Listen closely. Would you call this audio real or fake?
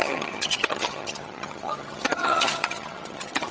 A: fake